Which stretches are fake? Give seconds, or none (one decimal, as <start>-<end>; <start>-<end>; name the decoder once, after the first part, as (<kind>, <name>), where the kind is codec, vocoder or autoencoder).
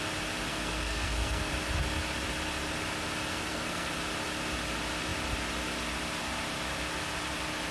0.5-1.5 (codec, SNAC); 3.3-3.9